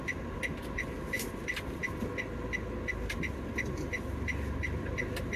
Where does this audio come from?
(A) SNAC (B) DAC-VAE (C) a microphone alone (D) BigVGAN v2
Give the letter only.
C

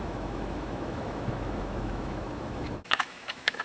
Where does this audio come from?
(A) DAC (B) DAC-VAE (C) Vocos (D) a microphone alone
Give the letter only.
B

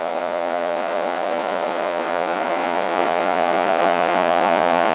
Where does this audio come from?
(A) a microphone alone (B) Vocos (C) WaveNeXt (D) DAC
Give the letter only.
B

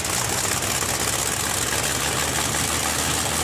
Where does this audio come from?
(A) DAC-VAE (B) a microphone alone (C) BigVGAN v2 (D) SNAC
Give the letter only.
B